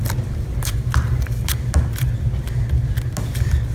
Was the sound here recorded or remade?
recorded